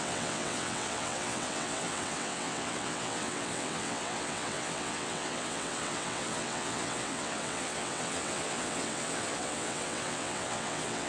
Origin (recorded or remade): remade